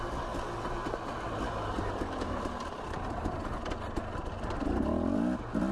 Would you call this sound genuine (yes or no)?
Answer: yes